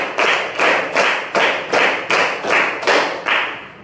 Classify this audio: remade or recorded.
remade